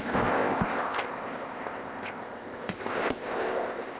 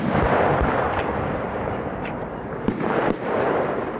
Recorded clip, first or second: second